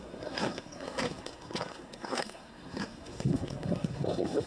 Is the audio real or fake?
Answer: fake